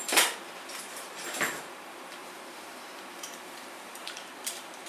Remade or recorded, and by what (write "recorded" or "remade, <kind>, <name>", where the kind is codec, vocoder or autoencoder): remade, vocoder, BigVGAN v2